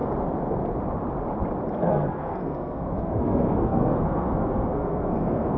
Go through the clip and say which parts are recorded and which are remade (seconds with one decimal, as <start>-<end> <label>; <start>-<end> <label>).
0.0-1.9 recorded; 1.9-5.6 remade